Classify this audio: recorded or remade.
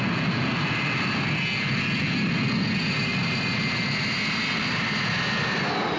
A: recorded